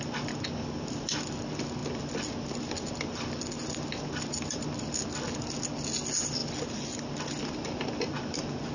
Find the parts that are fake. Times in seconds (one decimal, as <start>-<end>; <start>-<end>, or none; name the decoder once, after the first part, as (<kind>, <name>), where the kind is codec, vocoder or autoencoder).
none